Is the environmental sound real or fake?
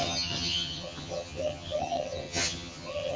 fake